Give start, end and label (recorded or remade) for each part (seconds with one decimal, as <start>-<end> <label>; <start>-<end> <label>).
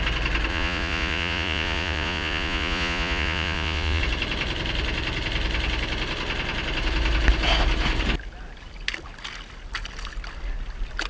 0.0-0.5 recorded; 0.5-4.0 remade; 4.0-11.1 recorded